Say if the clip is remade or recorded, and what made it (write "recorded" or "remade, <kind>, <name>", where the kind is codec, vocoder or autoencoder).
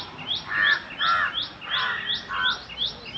recorded